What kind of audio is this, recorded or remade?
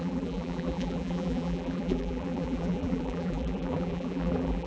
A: remade